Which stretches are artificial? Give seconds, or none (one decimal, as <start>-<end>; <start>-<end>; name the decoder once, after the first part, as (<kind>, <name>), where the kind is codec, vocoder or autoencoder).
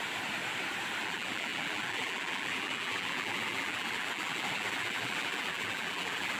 1.0-6.4 (vocoder, BigVGAN v2)